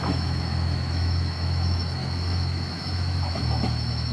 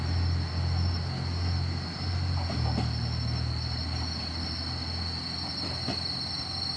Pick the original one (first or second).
second